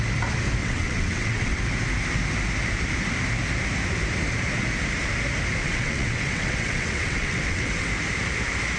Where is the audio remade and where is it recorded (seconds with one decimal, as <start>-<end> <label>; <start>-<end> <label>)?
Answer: 0.0-0.6 recorded; 0.6-1.6 remade; 1.6-5.6 recorded; 5.6-7.9 remade; 7.9-8.8 recorded